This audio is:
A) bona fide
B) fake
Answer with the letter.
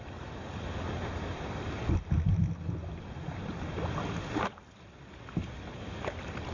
A